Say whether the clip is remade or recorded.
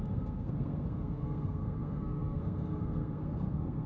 remade